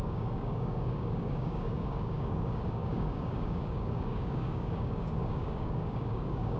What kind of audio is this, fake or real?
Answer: fake